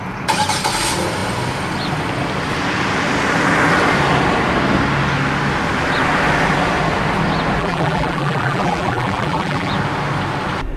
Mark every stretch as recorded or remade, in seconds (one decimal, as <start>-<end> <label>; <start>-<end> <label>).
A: 0.0-7.6 recorded; 7.6-9.7 remade; 9.7-10.8 recorded

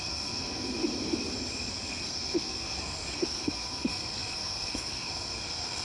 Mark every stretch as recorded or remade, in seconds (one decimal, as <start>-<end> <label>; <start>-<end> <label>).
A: 0.0-0.4 remade; 0.4-1.7 recorded; 1.7-5.8 remade

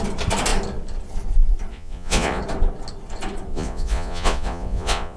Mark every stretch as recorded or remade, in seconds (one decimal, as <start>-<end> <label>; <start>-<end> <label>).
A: 0.0-1.7 recorded; 1.7-2.4 remade; 2.4-3.5 recorded; 3.5-5.2 remade